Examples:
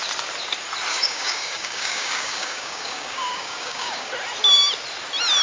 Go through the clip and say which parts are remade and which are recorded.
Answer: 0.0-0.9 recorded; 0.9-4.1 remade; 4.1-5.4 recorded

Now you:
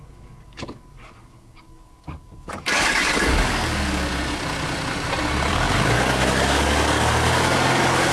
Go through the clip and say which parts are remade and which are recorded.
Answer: 0.0-4.1 remade; 4.1-5.5 recorded; 5.5-8.1 remade

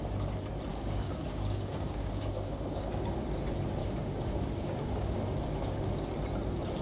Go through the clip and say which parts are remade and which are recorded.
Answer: 0.0-0.7 recorded; 0.7-2.9 remade; 2.9-3.8 recorded; 3.8-5.9 remade; 5.9-6.8 recorded

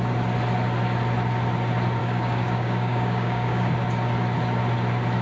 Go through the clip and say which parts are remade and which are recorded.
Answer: 0.0-2.0 recorded; 2.0-3.7 remade; 3.7-5.2 recorded

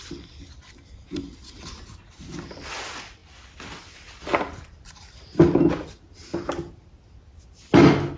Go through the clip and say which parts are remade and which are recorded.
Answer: 0.0-8.2 recorded

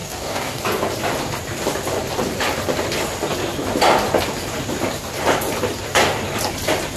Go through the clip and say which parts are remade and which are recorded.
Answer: 0.0-0.6 remade; 0.6-7.0 recorded

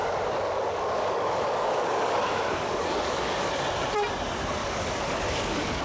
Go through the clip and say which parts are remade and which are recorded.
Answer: 0.0-3.5 remade; 3.5-4.6 recorded; 4.6-5.8 remade